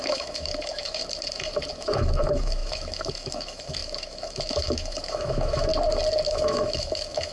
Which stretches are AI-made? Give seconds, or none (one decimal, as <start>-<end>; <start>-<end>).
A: 0.0-1.0; 1.7-5.7; 6.3-7.3